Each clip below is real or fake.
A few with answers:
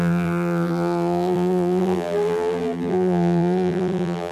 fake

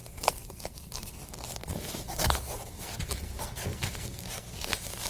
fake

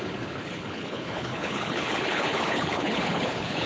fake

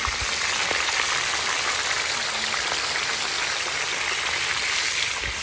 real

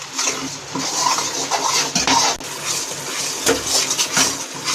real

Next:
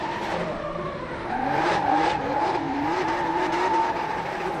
fake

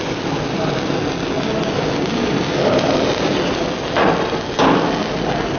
real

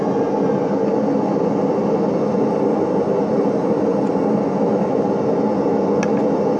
real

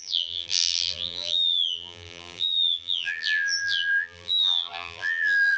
fake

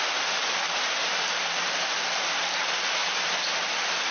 fake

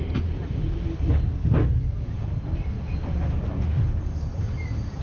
real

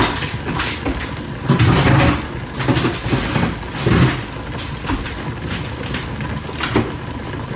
real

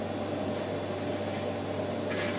real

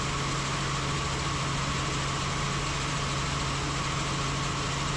real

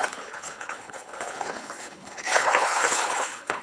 fake